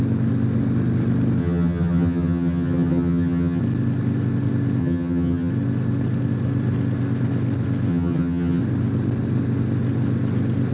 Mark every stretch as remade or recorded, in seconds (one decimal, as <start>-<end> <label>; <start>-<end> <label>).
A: 0.0-1.4 recorded; 1.4-3.6 remade; 3.6-4.8 recorded; 4.8-5.5 remade; 5.5-7.9 recorded; 7.9-8.6 remade; 8.6-10.7 recorded